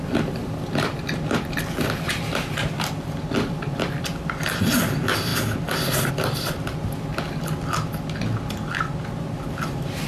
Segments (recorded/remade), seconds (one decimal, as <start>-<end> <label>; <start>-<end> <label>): 0.0-7.1 remade; 7.1-9.2 recorded; 9.2-10.1 remade